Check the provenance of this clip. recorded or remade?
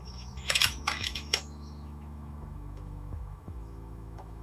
remade